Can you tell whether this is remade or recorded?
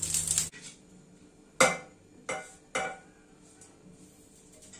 recorded